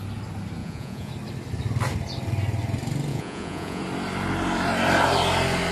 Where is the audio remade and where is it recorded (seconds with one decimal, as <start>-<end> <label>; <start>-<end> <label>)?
0.0-0.6 recorded; 0.6-1.1 remade; 1.1-3.1 recorded; 3.1-3.8 remade; 3.8-5.7 recorded